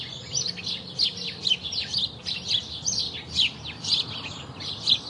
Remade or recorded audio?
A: recorded